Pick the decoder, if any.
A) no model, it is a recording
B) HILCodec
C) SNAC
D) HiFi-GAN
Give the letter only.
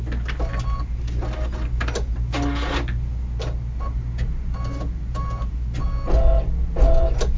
A